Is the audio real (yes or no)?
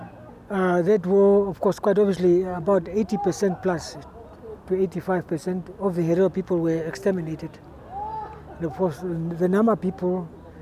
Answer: yes